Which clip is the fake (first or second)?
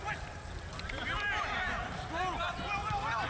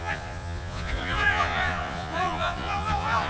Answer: second